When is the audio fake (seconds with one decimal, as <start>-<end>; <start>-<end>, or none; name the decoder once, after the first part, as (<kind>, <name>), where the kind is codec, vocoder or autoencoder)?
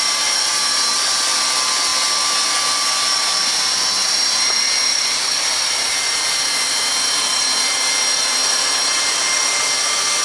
none